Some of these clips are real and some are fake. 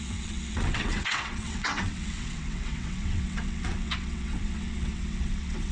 fake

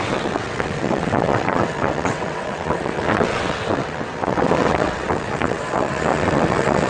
fake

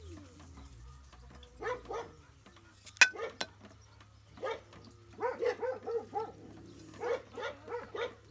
real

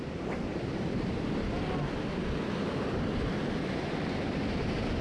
real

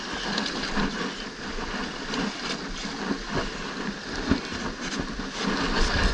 real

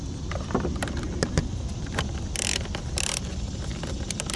real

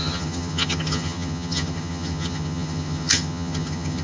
fake